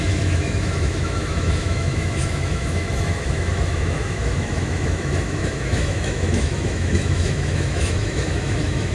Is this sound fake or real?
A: fake